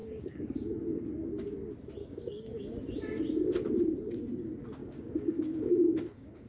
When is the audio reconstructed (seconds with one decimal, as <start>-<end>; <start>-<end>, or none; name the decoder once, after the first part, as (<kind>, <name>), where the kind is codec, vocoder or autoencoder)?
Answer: 0.0-0.8 (codec, DAC); 2.0-2.6; 4.8-6.5